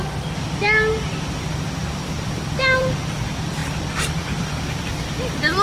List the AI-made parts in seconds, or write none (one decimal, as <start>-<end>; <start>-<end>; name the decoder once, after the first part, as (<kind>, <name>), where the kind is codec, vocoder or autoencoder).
none